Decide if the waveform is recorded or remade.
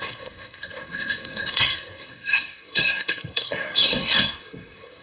remade